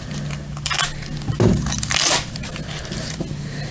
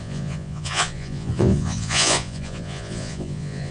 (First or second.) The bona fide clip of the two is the first